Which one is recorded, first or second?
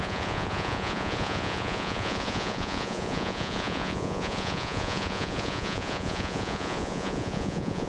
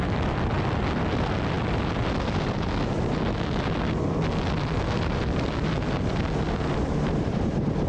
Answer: second